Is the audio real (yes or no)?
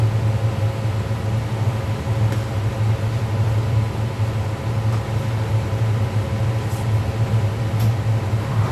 yes